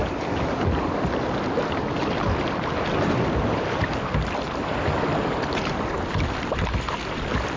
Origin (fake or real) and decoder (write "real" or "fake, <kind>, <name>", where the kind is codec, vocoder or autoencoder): real